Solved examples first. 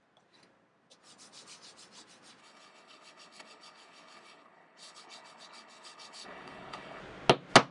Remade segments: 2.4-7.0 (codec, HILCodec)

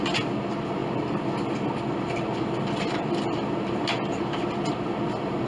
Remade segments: none